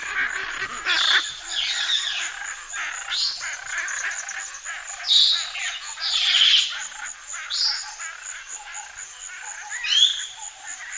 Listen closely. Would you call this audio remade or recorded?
recorded